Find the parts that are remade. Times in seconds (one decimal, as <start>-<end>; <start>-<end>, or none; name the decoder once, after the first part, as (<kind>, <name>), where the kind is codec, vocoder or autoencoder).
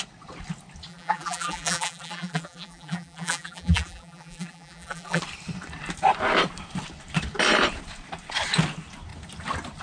0.9-5.2 (vocoder, BigVGAN v2)